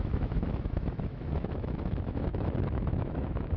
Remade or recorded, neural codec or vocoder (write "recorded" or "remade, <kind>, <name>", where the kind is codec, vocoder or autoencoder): remade, autoencoder, DAC-VAE